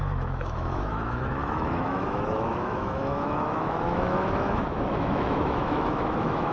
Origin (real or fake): fake